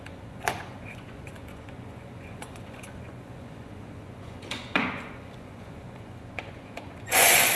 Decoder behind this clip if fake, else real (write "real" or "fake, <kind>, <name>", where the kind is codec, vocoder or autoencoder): fake, vocoder, Vocos